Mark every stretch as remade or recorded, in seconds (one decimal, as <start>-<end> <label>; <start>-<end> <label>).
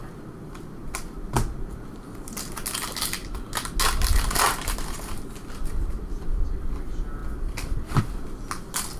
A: 0.0-7.2 recorded; 7.2-8.0 remade; 8.0-9.0 recorded